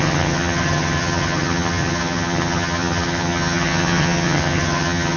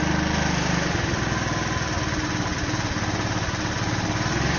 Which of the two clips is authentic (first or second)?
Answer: second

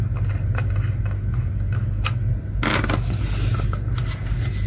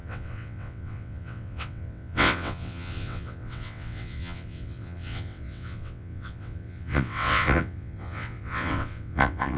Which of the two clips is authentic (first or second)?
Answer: first